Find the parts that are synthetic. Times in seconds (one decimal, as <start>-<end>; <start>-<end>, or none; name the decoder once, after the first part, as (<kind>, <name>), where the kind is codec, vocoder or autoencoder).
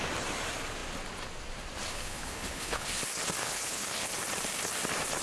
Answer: 1.9-2.9 (codec, HILCodec); 3.4-4.1